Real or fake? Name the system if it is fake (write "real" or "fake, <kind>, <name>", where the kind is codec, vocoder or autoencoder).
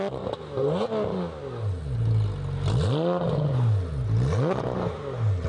real